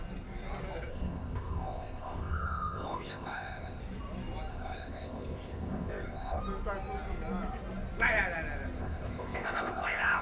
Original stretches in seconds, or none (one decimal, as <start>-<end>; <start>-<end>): 0.0-0.9; 3.8-4.5; 6.4-8.8